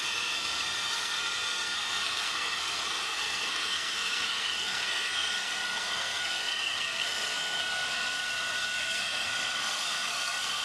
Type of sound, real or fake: fake